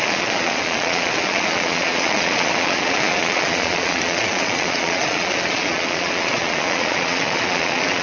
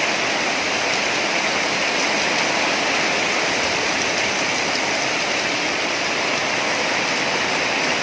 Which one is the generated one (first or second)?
first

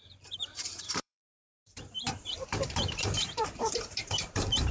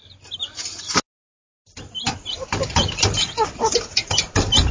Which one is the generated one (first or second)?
first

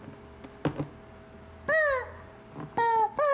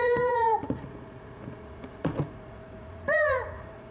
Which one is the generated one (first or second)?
second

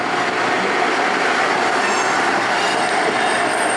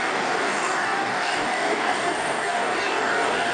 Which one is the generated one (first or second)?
second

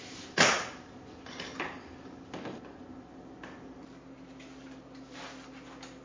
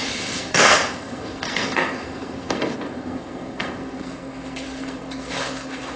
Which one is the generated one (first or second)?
second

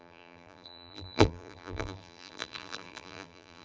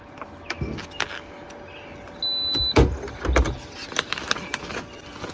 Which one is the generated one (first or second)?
first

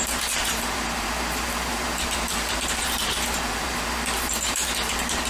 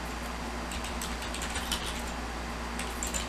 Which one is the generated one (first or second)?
first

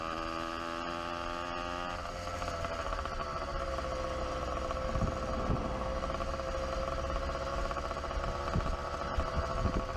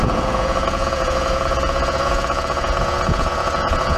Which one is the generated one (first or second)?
second